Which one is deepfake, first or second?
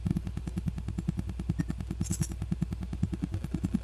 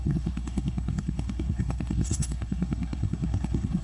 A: second